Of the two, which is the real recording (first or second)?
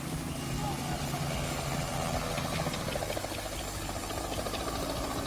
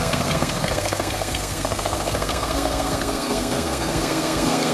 first